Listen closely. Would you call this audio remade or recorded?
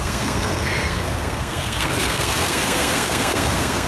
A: remade